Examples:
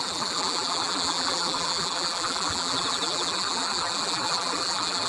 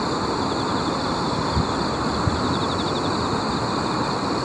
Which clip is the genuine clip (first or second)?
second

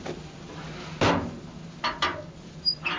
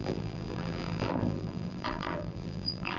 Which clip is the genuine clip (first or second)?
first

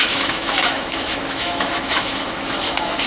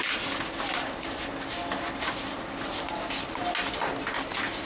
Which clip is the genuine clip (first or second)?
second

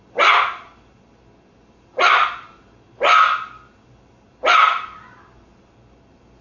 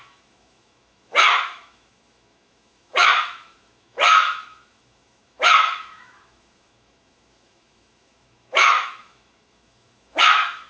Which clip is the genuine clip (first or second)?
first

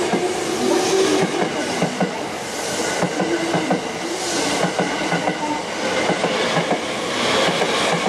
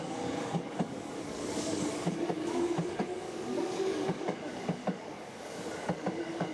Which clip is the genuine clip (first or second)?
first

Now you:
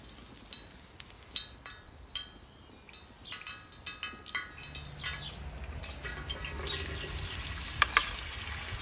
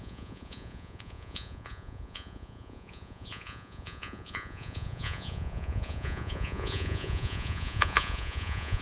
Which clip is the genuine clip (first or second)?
first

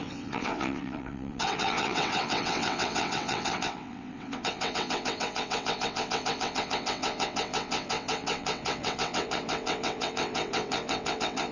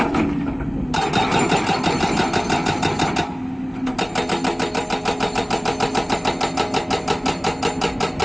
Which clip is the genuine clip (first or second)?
second